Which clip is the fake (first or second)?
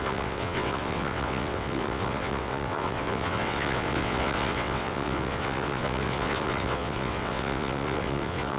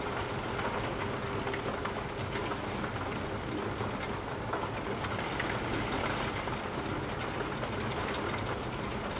first